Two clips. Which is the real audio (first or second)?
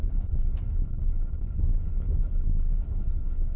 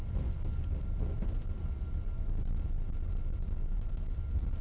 second